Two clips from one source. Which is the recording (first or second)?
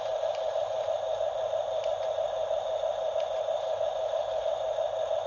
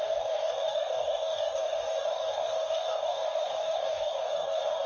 first